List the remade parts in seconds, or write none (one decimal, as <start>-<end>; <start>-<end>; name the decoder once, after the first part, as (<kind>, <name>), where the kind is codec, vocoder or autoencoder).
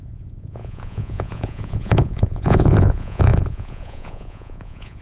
0.0-5.0 (vocoder, Vocos)